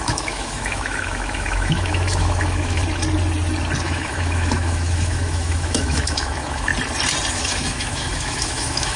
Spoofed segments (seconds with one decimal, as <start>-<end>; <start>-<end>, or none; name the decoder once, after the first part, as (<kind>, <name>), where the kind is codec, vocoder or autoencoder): 0.0-2.8 (autoencoder, DAC-VAE); 3.8-6.7; 7.3-9.0